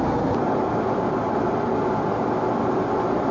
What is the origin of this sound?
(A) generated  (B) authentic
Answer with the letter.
B